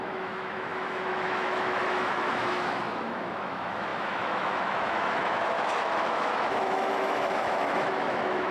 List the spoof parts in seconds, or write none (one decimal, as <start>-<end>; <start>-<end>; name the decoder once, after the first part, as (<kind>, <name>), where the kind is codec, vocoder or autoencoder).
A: 0.0-8.5 (autoencoder, DAC-VAE)